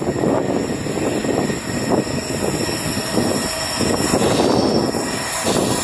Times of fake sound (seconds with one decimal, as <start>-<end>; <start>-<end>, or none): none